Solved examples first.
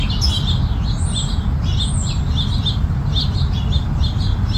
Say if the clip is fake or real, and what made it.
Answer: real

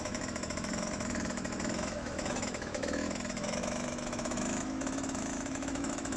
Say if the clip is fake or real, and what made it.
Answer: fake, autoencoder, DAC-VAE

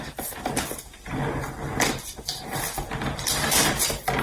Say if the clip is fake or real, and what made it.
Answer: real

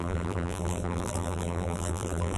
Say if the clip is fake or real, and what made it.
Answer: fake, vocoder, BigVGAN v2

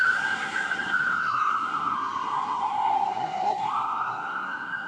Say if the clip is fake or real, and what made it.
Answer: fake, codec, SNAC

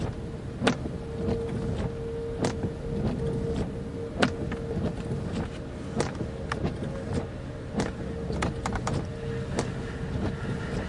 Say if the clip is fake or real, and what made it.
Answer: real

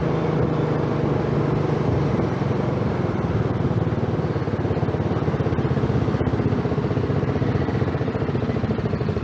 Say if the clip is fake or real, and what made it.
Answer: real